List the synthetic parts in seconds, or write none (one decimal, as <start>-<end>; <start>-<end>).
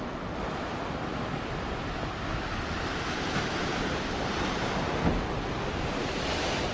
none